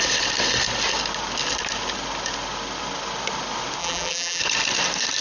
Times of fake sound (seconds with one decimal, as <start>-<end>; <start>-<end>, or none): 3.8-4.4